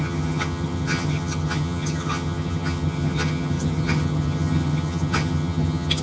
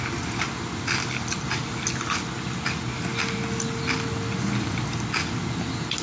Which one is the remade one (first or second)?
first